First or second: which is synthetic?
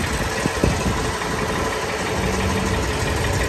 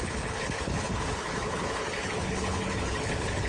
second